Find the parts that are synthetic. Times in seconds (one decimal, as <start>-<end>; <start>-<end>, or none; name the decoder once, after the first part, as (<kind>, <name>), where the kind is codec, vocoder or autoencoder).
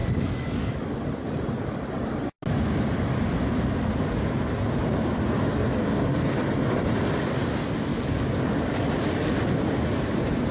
0.0-0.9 (codec, DAC); 7.9-8.8